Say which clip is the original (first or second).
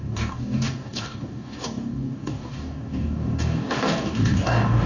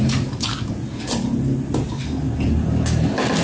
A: second